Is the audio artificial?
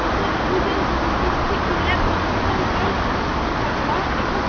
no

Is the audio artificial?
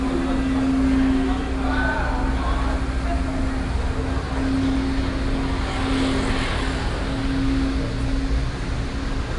no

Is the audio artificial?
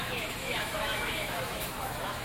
yes